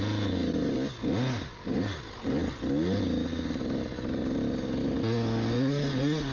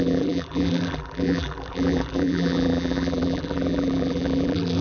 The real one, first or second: first